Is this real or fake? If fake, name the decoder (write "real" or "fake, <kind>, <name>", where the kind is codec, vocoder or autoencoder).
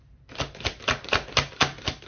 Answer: real